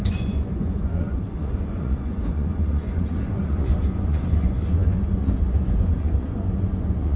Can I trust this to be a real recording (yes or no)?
no